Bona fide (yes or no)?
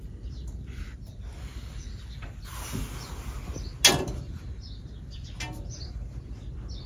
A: yes